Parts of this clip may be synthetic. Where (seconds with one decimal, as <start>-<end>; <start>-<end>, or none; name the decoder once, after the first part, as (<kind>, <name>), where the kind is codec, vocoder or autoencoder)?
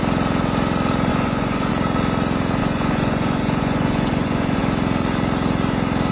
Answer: 1.1-1.7 (vocoder, Vocos); 2.6-4.6